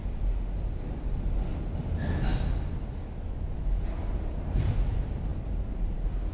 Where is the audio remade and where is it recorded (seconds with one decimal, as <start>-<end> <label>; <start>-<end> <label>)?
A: 0.0-6.3 recorded